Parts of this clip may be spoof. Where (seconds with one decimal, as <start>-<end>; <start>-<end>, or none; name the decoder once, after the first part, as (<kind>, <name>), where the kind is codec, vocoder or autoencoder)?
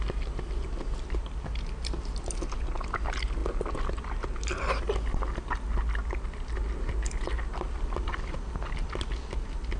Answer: none